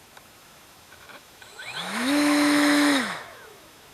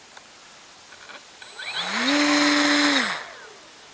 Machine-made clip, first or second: first